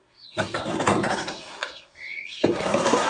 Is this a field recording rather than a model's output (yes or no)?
no